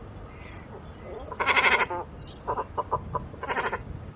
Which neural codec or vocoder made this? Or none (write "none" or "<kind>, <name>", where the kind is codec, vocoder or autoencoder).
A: none